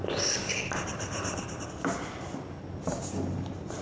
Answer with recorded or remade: recorded